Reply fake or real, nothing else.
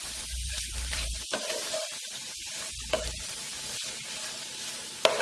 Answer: fake